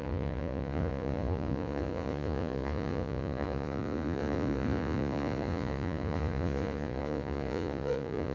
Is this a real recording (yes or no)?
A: no